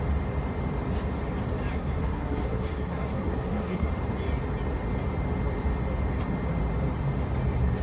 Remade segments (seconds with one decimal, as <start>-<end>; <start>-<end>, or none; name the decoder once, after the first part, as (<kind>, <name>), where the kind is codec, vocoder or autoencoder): 1.7-3.9 (codec, SNAC)